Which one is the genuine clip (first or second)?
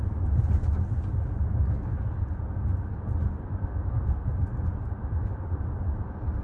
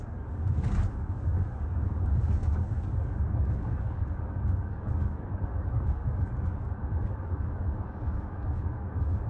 first